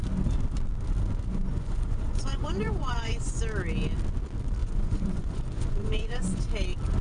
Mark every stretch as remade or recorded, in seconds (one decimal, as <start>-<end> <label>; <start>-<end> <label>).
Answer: 0.0-1.3 recorded; 1.3-3.4 remade; 3.4-4.6 recorded; 4.6-6.4 remade; 6.4-7.0 recorded